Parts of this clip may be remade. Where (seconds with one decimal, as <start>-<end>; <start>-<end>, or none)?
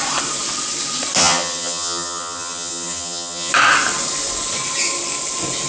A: 1.2-3.5